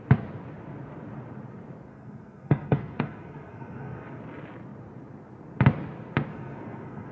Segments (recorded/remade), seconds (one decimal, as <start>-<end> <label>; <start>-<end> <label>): 0.0-1.9 recorded; 1.9-4.2 remade; 4.2-6.3 recorded; 6.3-7.1 remade